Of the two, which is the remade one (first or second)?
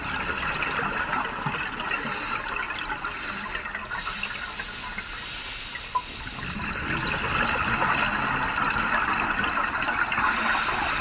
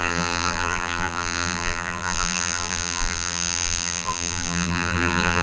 second